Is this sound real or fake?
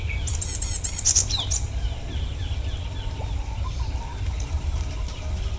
real